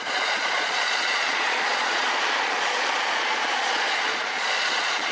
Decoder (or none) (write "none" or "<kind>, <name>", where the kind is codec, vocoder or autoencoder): vocoder, Vocos